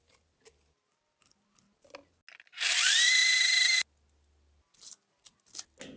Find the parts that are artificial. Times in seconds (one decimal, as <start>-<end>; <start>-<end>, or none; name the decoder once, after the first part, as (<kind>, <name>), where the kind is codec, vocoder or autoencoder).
none